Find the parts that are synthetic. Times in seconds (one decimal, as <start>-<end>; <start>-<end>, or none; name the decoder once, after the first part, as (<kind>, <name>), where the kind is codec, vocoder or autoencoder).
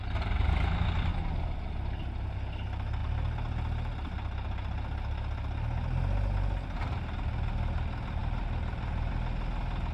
none